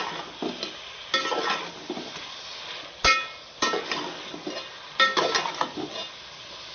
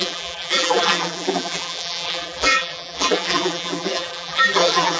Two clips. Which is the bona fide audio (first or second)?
first